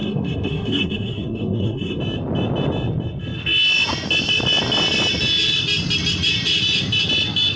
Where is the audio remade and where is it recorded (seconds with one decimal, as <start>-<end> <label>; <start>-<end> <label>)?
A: 0.0-2.0 remade; 2.0-7.6 recorded